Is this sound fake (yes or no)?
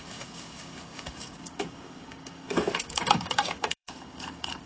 yes